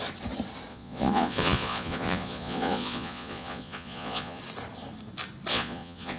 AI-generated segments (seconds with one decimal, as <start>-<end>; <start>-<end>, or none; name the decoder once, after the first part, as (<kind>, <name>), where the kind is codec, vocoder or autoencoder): 0.7-4.4 (vocoder, Vocos); 5.5-6.2